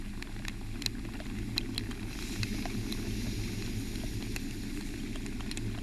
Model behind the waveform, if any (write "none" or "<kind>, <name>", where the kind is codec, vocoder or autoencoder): none